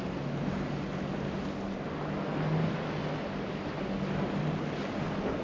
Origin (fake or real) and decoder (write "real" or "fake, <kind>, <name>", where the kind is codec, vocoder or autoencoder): real